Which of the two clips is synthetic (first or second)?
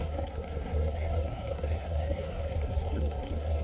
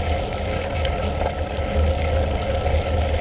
first